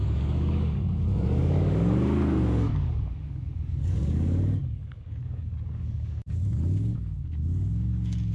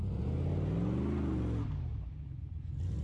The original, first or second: second